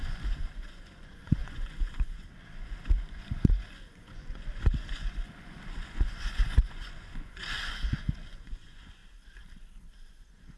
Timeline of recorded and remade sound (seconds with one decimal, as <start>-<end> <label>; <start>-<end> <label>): 0.0-9.0 remade; 9.0-10.1 recorded; 10.1-10.6 remade